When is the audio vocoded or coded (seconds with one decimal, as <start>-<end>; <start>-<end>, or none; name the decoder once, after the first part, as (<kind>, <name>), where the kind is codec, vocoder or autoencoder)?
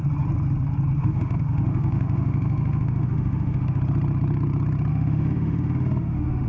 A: 1.0-3.8 (autoencoder, DAC-VAE); 4.9-6.5